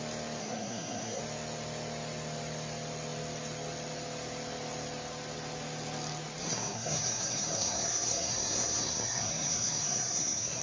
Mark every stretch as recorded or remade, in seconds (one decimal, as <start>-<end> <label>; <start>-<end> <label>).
0.0-0.4 recorded; 0.4-1.2 remade; 1.2-6.4 recorded; 6.4-10.6 remade